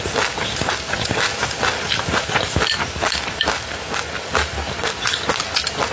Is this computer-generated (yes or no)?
no